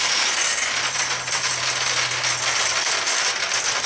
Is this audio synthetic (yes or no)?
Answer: no